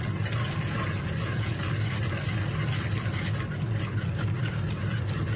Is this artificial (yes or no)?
no